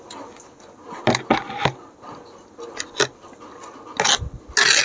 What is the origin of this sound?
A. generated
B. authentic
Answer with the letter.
B